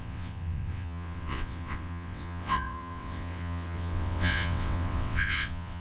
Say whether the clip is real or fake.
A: fake